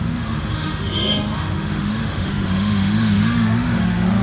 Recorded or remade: remade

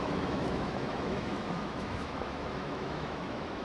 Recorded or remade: remade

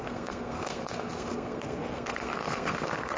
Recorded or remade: remade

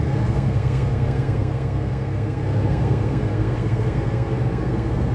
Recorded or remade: remade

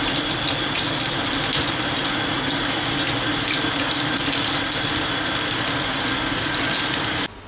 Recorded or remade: recorded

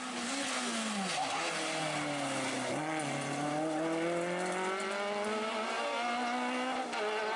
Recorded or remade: recorded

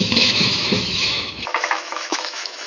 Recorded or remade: remade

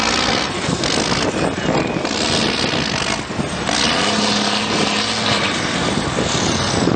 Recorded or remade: recorded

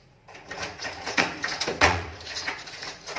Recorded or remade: remade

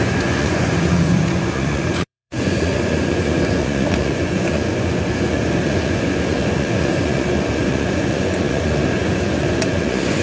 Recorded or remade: remade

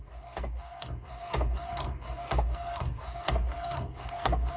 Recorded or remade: remade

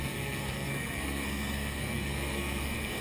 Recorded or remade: remade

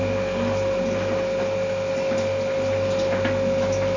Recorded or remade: recorded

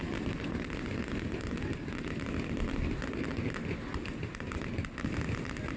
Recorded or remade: recorded